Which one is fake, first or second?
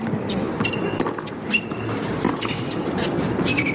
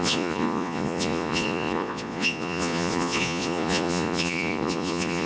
second